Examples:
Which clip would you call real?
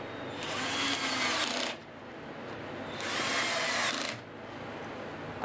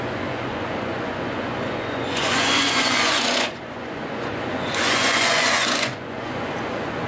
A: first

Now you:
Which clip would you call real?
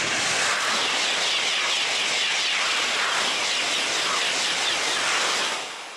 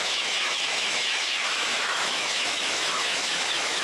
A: first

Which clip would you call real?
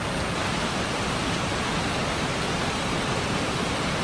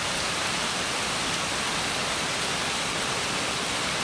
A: second